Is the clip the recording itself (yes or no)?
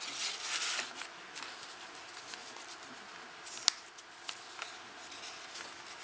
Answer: yes